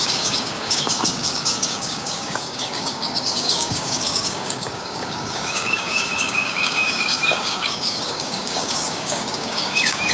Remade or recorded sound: remade